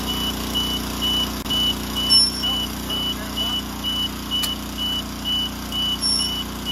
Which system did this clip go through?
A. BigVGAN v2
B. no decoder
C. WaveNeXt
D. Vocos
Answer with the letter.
B